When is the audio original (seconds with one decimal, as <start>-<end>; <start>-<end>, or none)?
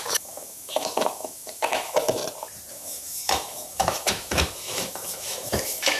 2.2-2.7